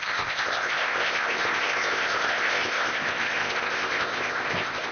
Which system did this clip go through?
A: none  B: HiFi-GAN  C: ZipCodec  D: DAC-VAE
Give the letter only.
C